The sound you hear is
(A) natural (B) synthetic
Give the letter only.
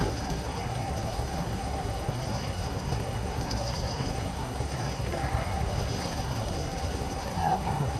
B